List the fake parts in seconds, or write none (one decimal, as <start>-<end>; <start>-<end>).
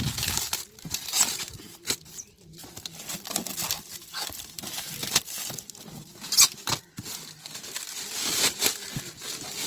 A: none